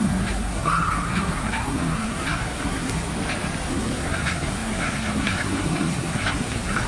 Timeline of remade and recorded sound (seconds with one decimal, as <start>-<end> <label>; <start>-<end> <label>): 0.0-3.1 remade; 3.1-3.7 recorded; 3.7-6.9 remade